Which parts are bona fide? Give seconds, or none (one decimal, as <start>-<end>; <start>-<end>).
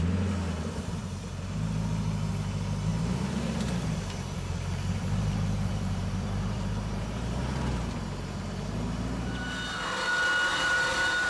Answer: 0.0-1.0; 1.5-2.9; 8.0-10.5